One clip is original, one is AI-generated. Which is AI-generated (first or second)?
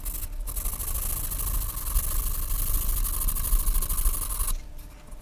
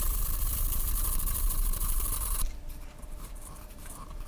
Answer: second